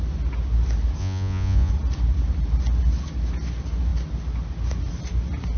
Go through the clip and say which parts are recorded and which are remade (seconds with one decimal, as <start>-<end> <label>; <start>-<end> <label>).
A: 0.0-1.0 recorded; 1.0-1.7 remade; 1.7-5.6 recorded